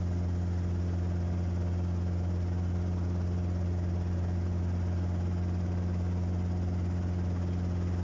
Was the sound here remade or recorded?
recorded